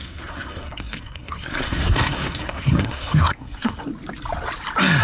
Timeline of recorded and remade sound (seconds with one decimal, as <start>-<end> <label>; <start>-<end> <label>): 0.0-3.9 remade; 3.9-5.0 recorded